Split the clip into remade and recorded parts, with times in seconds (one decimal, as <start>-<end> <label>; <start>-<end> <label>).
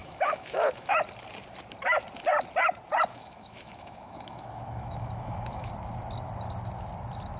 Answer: 0.0-0.9 remade; 0.9-3.1 recorded; 3.1-5.7 remade; 5.7-7.4 recorded